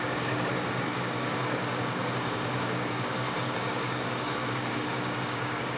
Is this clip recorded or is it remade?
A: remade